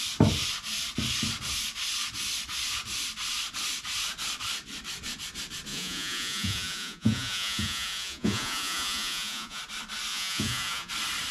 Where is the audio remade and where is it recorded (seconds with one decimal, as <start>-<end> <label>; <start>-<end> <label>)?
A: 0.0-5.7 recorded; 5.7-9.6 remade; 9.6-10.1 recorded; 10.1-10.9 remade; 10.9-11.3 recorded